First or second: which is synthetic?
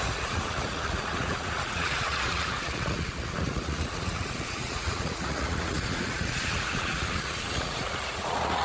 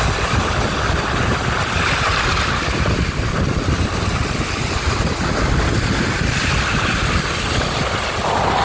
first